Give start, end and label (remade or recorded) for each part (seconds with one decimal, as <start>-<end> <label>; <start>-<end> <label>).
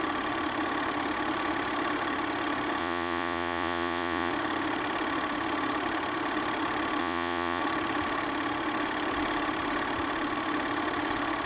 0.0-2.8 recorded; 2.8-4.3 remade; 4.3-7.0 recorded; 7.0-7.6 remade; 7.6-11.5 recorded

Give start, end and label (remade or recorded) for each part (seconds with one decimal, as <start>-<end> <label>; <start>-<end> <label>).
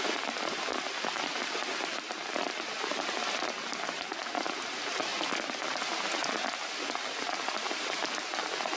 0.0-8.8 recorded